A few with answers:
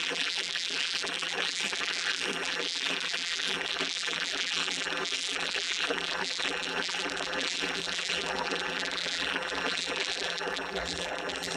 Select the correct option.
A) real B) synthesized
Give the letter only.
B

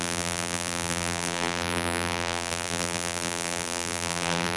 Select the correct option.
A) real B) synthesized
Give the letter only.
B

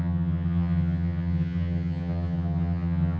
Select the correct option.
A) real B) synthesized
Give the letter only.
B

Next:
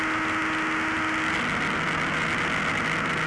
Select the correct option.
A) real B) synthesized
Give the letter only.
A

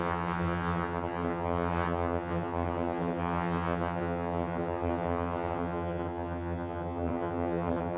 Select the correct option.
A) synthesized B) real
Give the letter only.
A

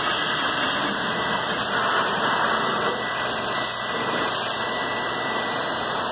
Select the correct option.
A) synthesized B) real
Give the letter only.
B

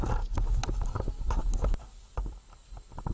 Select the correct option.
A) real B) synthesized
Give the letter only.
A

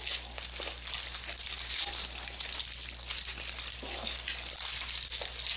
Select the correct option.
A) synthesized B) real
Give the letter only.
A